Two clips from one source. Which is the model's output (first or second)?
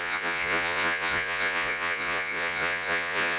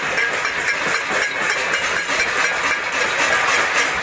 first